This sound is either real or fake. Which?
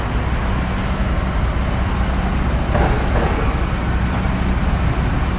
real